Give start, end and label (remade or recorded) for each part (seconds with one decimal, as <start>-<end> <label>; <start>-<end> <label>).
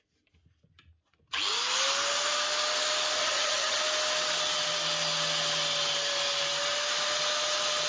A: 0.0-3.2 recorded; 3.2-3.8 remade; 3.8-7.9 recorded